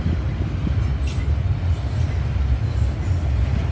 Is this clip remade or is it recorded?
recorded